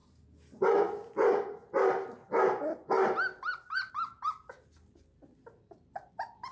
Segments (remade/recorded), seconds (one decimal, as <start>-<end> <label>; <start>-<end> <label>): 0.0-6.5 recorded

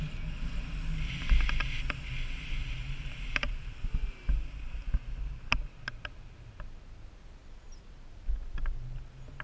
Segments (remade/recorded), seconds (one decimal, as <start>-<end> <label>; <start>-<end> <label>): 0.0-2.8 recorded; 2.8-3.7 remade; 3.7-9.4 recorded

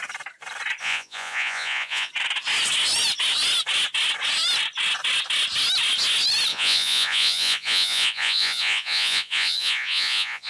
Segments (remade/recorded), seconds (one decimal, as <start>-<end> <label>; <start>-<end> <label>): 0.0-0.8 recorded; 0.8-2.1 remade; 2.1-6.5 recorded; 6.5-10.5 remade

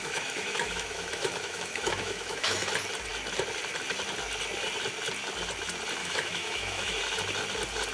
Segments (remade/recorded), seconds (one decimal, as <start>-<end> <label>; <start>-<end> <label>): 0.0-2.7 remade; 2.7-6.0 recorded; 6.0-7.0 remade; 7.0-7.9 recorded

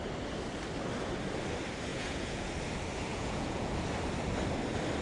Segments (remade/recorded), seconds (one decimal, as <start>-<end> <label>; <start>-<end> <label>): 0.0-1.9 recorded; 1.9-2.5 remade; 2.5-3.1 recorded; 3.1-3.7 remade; 3.7-5.0 recorded

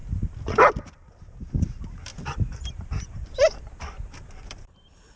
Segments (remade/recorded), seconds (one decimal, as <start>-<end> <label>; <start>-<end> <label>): 0.0-0.8 recorded; 0.8-5.2 remade

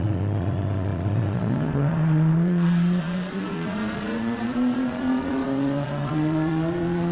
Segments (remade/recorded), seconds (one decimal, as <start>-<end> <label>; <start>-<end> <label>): 0.0-7.1 remade